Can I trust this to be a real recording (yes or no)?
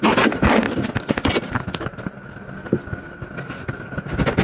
yes